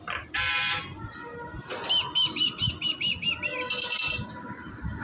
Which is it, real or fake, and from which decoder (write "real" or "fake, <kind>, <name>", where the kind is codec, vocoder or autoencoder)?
real